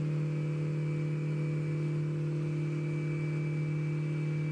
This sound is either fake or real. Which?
real